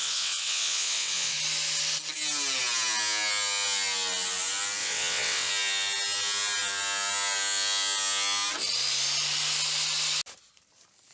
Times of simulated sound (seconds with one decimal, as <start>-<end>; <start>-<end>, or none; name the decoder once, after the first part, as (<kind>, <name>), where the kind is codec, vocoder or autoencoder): 0.0-1.4 (vocoder, WaveNeXt); 4.8-5.5